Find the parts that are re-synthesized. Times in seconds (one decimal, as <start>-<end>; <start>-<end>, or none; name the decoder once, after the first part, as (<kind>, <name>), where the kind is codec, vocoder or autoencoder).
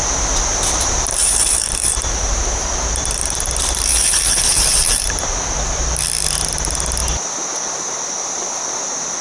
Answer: 0.5-5.2 (vocoder, BigVGAN v2)